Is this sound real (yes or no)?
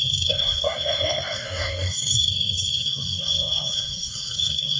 no